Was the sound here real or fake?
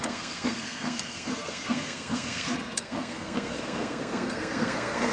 fake